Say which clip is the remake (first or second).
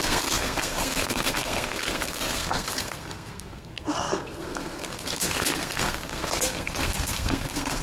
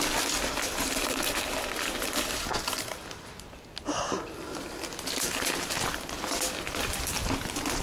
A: first